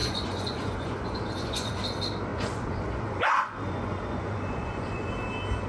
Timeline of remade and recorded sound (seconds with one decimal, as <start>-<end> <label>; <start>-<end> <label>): 0.0-1.8 remade; 1.8-2.3 recorded; 2.3-5.1 remade; 5.1-5.7 recorded